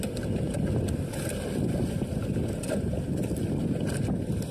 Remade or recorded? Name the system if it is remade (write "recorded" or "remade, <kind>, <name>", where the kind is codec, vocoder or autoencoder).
recorded